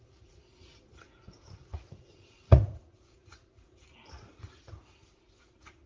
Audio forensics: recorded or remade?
remade